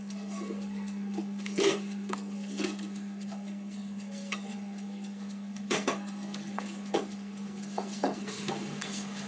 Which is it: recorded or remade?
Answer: remade